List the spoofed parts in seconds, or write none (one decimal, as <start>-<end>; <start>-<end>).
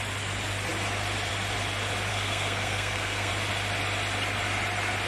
2.1-3.3